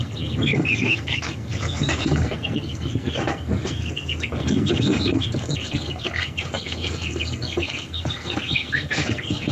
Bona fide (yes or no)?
no